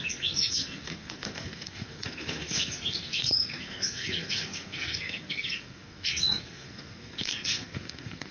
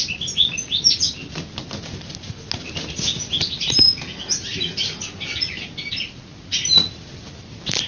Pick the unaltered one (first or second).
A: second